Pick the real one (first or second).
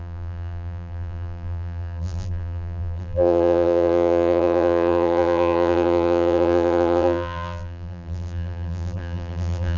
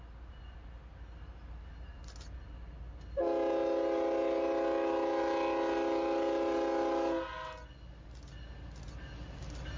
second